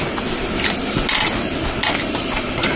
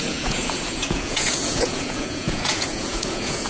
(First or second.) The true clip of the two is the first